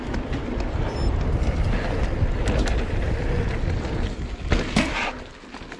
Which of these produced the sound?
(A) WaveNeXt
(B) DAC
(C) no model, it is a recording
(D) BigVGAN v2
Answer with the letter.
C